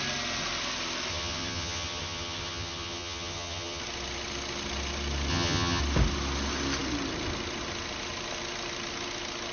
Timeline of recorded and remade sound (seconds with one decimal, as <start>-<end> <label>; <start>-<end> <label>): 0.0-1.1 recorded; 1.1-3.8 remade; 3.8-5.3 recorded; 5.3-5.8 remade; 5.8-9.5 recorded

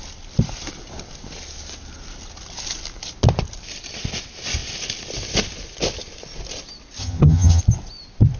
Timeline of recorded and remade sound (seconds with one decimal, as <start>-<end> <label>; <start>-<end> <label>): 0.0-7.0 recorded; 7.0-7.6 remade; 7.6-8.4 recorded